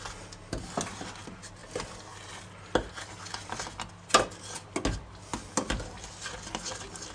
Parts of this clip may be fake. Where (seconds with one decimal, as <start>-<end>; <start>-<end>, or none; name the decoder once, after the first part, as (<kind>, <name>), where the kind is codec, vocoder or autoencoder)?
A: none